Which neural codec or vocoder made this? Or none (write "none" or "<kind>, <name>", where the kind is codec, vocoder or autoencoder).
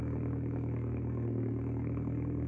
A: codec, SNAC